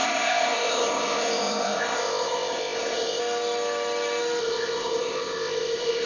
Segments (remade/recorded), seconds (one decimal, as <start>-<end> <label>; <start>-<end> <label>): 0.0-3.2 remade; 3.2-4.4 recorded; 4.4-6.1 remade